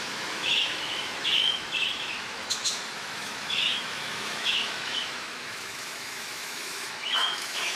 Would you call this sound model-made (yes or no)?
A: yes